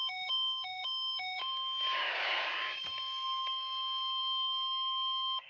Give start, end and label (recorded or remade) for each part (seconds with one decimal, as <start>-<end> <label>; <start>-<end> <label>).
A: 0.0-5.5 remade